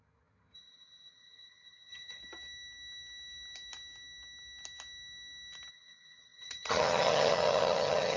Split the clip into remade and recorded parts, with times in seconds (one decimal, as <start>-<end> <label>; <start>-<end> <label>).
0.0-2.2 remade; 2.2-5.7 recorded; 5.7-8.2 remade